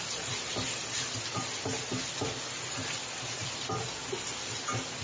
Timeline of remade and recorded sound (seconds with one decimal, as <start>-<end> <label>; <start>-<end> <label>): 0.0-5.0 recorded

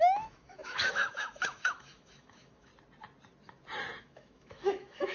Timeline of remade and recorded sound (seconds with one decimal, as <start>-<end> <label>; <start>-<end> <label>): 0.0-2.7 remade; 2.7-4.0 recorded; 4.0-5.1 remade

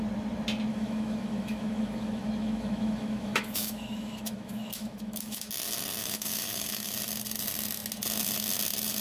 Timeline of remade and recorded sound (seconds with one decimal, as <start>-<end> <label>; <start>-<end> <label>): 0.0-0.7 recorded; 0.7-5.5 remade; 5.5-6.0 recorded; 6.0-6.9 remade; 6.9-9.0 recorded

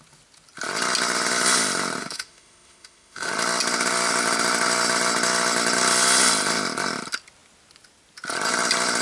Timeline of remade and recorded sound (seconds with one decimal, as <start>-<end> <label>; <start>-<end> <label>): 0.0-2.0 recorded; 2.0-3.3 remade; 3.3-9.0 recorded